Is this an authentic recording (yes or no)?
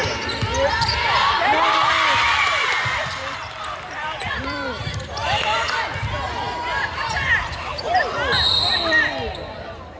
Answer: no